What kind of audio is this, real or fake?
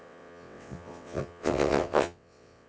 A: fake